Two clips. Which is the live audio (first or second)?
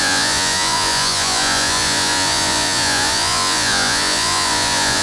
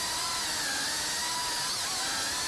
second